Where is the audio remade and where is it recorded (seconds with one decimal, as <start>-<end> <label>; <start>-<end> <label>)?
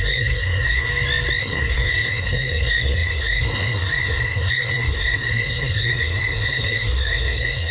0.0-0.9 remade; 0.9-1.4 recorded; 1.4-7.7 remade